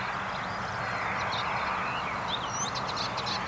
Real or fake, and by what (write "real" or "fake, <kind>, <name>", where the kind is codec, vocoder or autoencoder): real